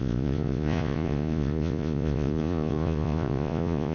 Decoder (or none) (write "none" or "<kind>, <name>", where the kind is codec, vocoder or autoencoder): vocoder, Vocos